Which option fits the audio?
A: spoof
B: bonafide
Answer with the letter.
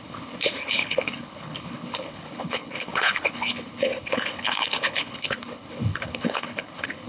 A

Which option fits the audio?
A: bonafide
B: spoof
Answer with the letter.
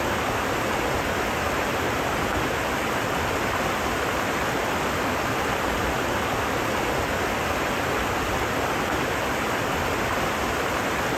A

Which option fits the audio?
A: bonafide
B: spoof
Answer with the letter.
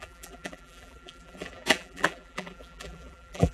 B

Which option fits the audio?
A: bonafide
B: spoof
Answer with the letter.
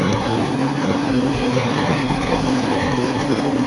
B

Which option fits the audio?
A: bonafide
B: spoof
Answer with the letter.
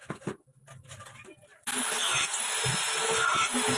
A